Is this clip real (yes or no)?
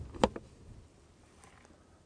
yes